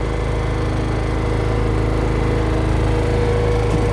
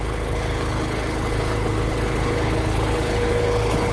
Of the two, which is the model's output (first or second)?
second